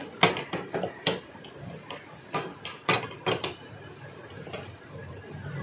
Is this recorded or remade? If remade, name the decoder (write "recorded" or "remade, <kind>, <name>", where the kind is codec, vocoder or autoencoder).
recorded